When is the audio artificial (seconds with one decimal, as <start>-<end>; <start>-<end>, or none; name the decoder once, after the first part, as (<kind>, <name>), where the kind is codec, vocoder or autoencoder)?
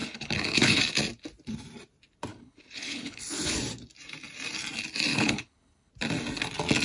0.0-0.8 (codec, HILCodec); 2.3-3.6; 5.1-5.9